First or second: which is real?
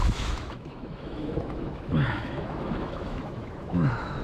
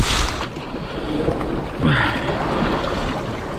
second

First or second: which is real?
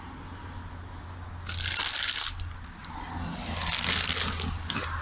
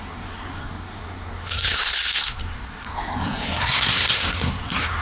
first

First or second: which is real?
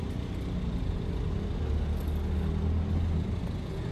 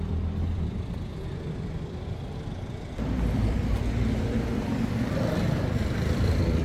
first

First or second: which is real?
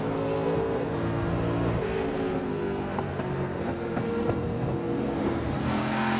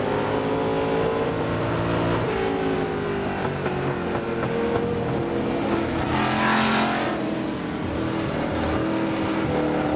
second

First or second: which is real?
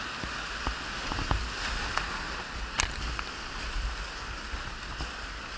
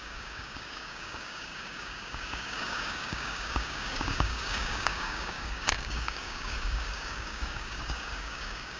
first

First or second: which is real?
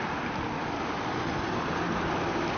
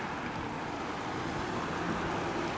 second